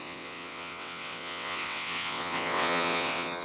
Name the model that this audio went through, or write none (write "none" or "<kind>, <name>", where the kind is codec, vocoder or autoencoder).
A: vocoder, WaveNeXt